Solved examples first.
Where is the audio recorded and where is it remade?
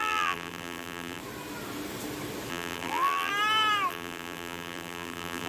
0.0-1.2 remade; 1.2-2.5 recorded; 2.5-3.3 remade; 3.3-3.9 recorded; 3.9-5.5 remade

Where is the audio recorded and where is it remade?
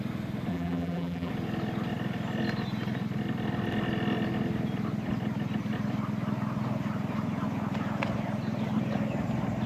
0.0-0.5 recorded; 0.5-1.3 remade; 1.3-9.7 recorded